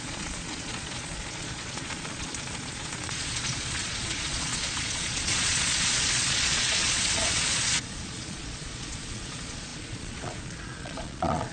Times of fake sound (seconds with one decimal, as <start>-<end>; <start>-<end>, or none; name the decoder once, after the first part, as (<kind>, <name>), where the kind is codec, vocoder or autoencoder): 0.0-11.5 (vocoder, Vocos)